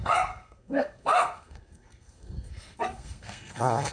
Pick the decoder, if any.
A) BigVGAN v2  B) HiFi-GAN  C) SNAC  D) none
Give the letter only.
C